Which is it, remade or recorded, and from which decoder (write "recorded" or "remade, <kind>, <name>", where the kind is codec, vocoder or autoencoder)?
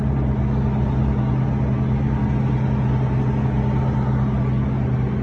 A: recorded